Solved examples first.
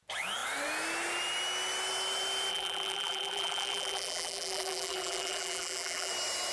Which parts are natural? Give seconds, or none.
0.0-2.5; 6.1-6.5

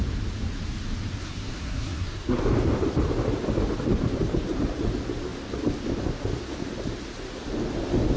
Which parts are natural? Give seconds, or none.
0.0-1.2; 2.4-8.2

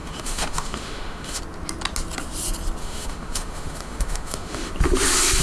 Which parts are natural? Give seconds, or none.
1.4-2.8; 4.7-5.4

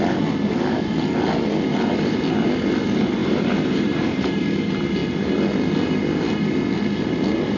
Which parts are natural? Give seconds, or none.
0.0-3.2; 4.6-7.6

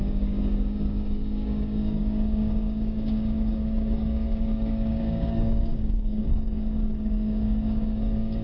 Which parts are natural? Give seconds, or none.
none

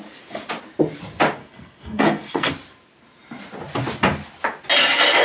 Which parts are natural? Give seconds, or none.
0.0-1.4; 2.5-5.2

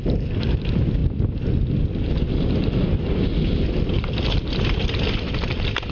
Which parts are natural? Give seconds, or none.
0.0-5.9